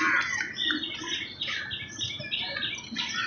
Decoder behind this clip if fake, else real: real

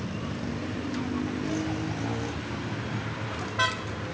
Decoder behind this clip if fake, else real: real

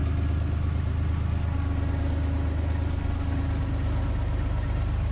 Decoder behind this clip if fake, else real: real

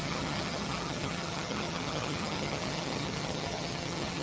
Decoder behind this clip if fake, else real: fake, vocoder, HiFi-GAN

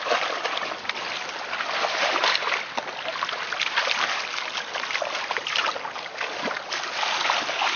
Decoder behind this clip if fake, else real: real